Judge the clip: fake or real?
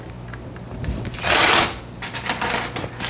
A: real